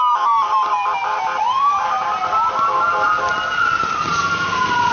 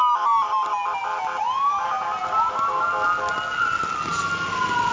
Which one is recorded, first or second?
second